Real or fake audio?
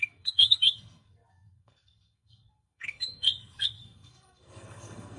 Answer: fake